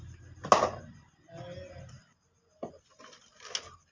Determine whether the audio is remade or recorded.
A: recorded